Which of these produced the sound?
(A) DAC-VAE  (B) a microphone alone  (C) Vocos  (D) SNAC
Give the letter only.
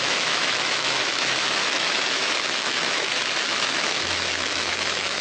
A